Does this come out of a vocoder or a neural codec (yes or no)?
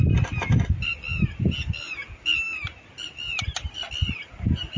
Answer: no